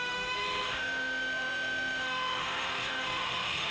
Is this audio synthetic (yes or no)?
yes